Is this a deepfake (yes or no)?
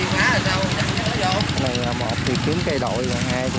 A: no